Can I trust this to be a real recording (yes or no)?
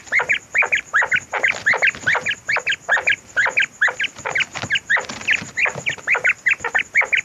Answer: yes